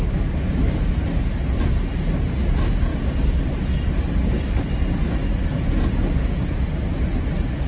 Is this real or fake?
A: real